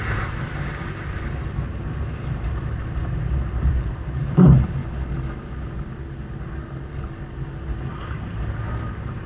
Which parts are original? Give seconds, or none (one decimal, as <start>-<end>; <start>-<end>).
4.8-7.9